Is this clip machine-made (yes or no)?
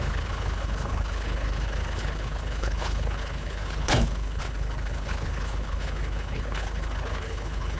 yes